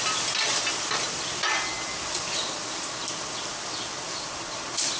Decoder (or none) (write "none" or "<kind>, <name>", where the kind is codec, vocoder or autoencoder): none